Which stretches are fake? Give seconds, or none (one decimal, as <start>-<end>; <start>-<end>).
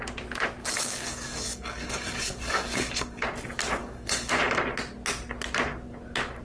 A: 0.6-3.2; 3.8-4.3